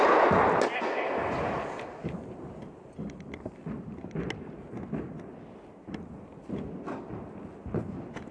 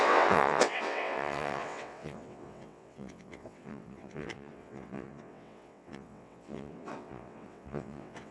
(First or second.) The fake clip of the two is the second